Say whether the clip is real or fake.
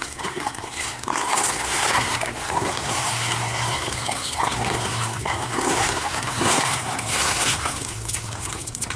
fake